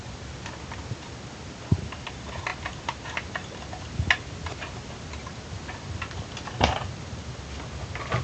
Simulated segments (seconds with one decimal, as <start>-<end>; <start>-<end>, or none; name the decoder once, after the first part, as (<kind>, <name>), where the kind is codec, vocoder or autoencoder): none